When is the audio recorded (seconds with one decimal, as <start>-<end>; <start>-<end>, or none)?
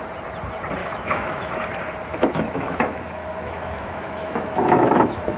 0.0-0.8; 1.5-2.1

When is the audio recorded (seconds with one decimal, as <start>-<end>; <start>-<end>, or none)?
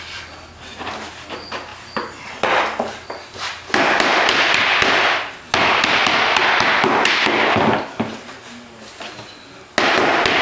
0.0-10.4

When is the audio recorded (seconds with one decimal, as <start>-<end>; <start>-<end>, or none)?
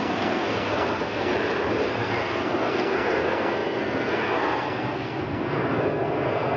1.3-1.9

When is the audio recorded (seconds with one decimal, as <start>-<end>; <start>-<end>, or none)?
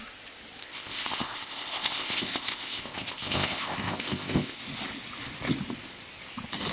0.0-0.6; 4.6-6.7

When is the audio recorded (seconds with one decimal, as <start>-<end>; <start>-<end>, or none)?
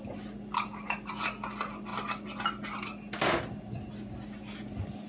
0.0-5.1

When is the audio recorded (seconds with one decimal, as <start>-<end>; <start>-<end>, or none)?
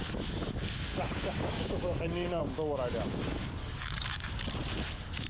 0.0-0.9; 2.4-3.6; 4.6-5.3